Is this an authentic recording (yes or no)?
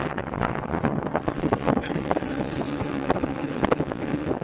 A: no